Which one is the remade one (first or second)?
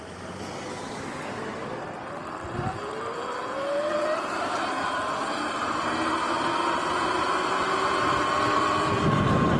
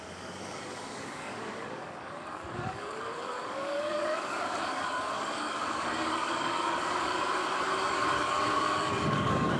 second